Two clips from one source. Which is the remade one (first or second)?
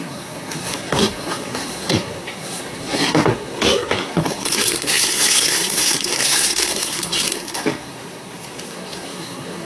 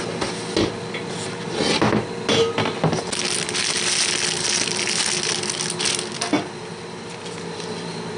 first